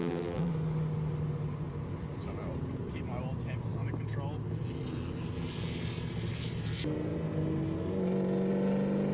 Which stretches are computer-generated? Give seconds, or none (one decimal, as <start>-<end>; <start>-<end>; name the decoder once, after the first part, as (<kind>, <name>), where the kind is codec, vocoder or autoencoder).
0.0-0.5 (vocoder, BigVGAN v2)